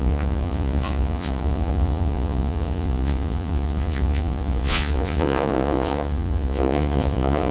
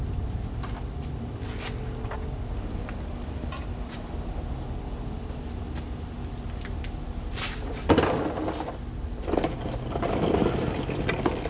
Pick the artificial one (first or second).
first